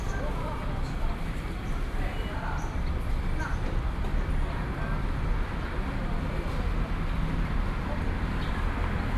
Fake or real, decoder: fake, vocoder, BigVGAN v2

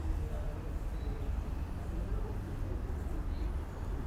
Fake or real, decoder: fake, vocoder, BigVGAN v2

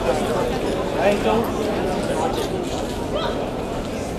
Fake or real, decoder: real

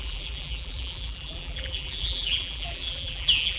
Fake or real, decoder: fake, vocoder, BigVGAN v2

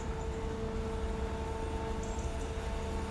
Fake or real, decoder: real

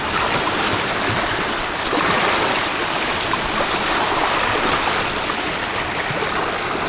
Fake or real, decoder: real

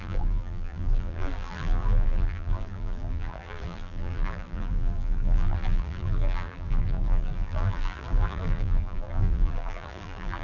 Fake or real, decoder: fake, vocoder, BigVGAN v2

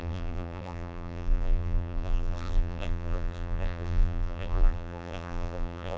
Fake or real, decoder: fake, vocoder, BigVGAN v2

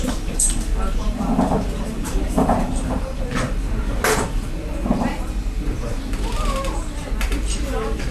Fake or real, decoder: fake, vocoder, BigVGAN v2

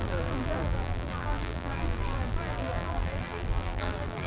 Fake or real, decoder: fake, vocoder, BigVGAN v2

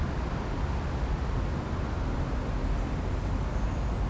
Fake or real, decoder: real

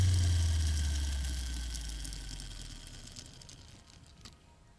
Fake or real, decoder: real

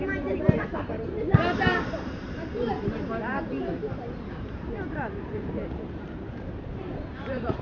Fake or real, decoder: fake, vocoder, BigVGAN v2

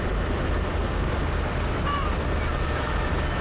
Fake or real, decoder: real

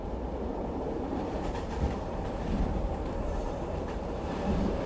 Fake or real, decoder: fake, vocoder, BigVGAN v2